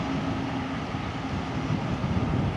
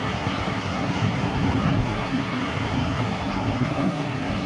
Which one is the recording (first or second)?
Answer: first